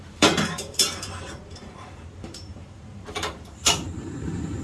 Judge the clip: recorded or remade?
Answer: remade